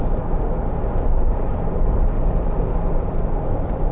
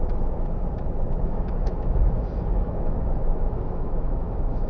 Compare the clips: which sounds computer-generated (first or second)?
second